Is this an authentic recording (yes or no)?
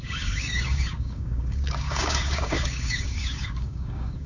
no